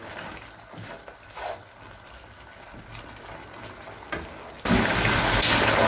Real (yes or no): yes